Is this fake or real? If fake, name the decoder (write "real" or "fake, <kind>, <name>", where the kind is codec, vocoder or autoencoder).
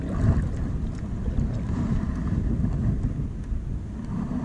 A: real